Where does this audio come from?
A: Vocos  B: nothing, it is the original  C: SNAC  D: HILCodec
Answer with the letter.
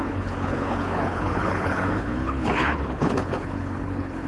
D